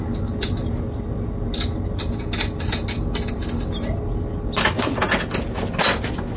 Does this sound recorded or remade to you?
recorded